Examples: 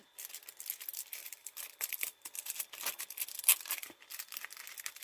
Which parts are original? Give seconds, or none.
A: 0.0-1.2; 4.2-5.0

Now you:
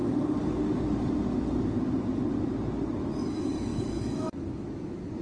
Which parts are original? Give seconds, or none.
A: 0.0-3.0

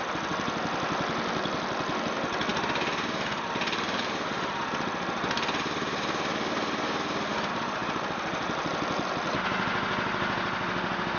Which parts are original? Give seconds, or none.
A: 0.0-7.8; 8.7-11.2

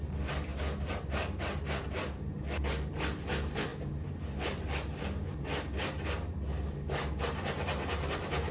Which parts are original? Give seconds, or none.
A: 0.0-8.5

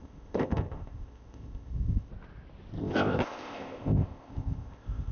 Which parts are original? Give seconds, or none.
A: 2.1-2.8

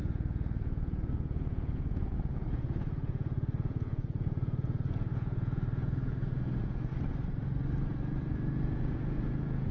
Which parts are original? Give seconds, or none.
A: 6.9-8.2

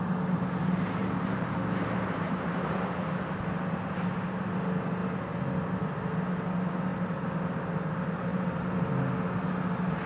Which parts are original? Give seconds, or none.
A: 0.0-1.0; 2.5-8.3; 8.9-10.1

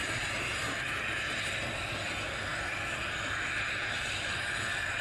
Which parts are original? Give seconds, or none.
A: 1.0-2.5; 4.4-5.0